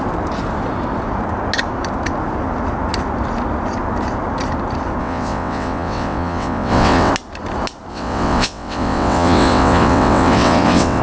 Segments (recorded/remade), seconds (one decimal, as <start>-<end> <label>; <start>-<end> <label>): 0.0-5.0 recorded; 5.0-7.1 remade; 7.1-7.9 recorded; 7.9-11.0 remade